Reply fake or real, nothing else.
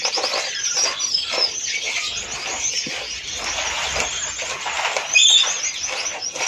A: real